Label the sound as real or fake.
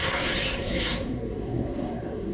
fake